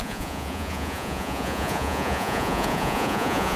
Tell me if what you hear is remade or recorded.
remade